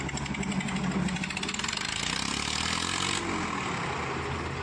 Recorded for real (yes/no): yes